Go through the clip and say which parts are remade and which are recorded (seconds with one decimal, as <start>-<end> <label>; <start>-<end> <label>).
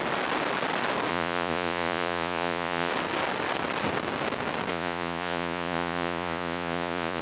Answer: 0.0-1.1 recorded; 1.1-2.9 remade; 2.9-4.7 recorded; 4.7-7.2 remade